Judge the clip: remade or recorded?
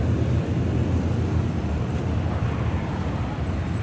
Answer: recorded